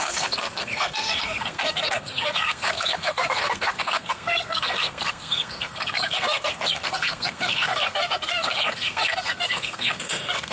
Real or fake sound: fake